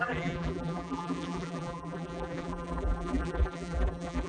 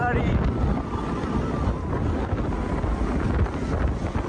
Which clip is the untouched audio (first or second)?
second